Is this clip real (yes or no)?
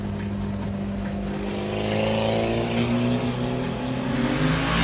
yes